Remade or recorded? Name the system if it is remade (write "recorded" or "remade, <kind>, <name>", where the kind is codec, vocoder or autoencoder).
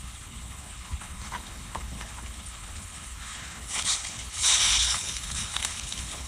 remade, codec, HILCodec